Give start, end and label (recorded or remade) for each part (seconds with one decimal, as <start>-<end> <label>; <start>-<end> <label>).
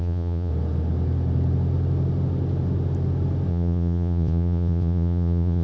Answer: 0.0-0.5 remade; 0.5-3.5 recorded; 3.5-5.6 remade